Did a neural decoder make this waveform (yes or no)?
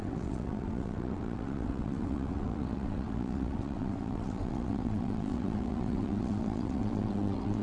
yes